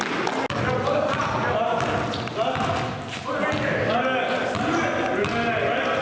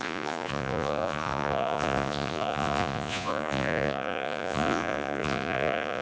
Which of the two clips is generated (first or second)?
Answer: second